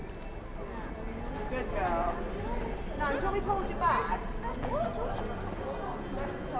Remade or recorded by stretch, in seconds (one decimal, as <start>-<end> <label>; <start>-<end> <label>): 0.0-6.6 recorded